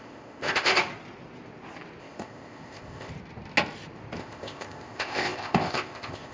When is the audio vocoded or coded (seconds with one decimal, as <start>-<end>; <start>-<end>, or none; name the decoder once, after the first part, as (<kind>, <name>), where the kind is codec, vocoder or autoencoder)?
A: 0.0-0.7 (codec, ZipCodec); 2.0-3.1; 4.2-6.3